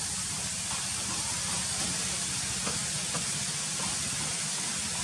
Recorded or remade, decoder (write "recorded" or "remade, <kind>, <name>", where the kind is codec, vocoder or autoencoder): recorded